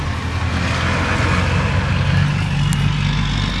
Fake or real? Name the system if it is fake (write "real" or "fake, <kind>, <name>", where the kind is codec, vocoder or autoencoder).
real